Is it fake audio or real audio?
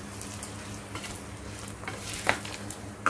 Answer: real